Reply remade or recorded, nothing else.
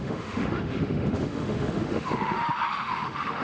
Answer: remade